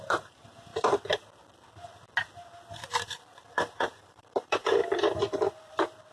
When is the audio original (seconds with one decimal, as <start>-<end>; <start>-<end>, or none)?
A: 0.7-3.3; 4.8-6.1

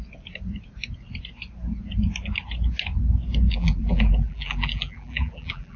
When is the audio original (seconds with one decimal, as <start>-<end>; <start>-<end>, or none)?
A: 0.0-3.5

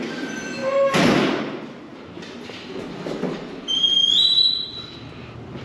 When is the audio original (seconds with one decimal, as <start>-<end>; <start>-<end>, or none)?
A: 0.0-1.9; 4.0-5.6

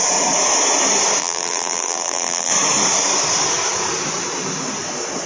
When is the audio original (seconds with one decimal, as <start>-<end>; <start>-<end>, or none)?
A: 0.0-1.2; 2.5-5.3

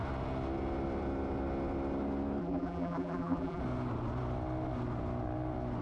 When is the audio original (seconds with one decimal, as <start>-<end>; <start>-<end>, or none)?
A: 0.0-2.4; 3.6-5.8

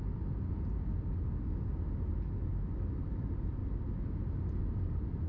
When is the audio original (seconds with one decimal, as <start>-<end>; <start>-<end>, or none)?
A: 0.0-3.2; 3.6-4.6

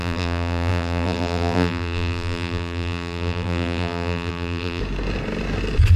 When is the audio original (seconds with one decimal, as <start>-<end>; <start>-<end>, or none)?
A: 4.8-6.0